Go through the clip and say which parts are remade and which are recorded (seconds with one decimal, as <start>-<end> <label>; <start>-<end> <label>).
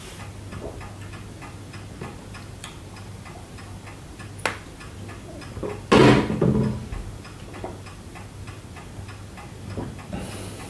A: 0.0-10.7 recorded